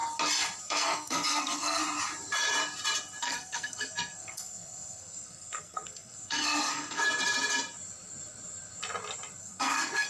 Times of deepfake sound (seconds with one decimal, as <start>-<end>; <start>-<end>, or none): 0.6-1.8; 3.2-7.0; 9.4-10.1